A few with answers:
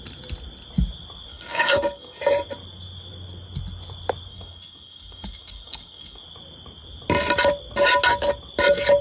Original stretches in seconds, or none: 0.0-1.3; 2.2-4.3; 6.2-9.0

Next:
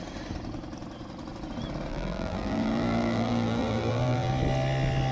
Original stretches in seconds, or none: 0.0-1.9; 4.3-5.1